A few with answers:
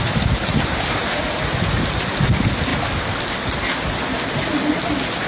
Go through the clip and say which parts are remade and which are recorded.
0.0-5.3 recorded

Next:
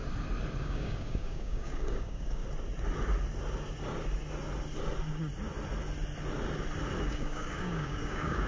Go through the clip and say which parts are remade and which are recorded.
0.0-0.6 recorded; 0.6-2.4 remade; 2.4-7.0 recorded; 7.0-8.5 remade

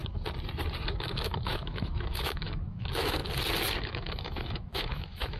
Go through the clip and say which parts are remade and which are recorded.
0.0-0.9 recorded; 0.9-3.2 remade; 3.2-3.8 recorded; 3.8-5.4 remade

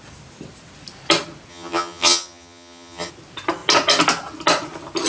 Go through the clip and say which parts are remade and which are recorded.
0.0-1.5 recorded; 1.5-3.1 remade; 3.1-5.1 recorded

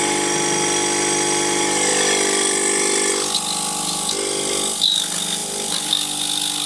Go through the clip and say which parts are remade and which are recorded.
0.0-5.4 recorded; 5.4-5.9 remade; 5.9-6.7 recorded

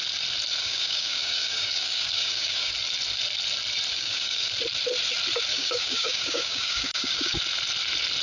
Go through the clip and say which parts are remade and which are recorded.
0.0-0.6 recorded; 0.6-2.7 remade; 2.7-3.9 recorded; 3.9-4.5 remade; 4.5-5.5 recorded; 5.5-7.4 remade; 7.4-8.2 recorded

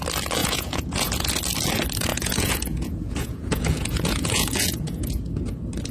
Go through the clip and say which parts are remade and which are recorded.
0.0-0.4 recorded; 0.4-1.3 remade; 1.3-2.1 recorded; 2.1-5.2 remade; 5.2-5.9 recorded

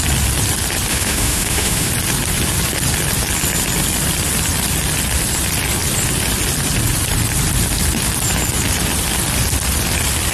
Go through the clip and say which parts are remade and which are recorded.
0.0-0.9 recorded; 0.9-1.9 remade; 1.9-10.3 recorded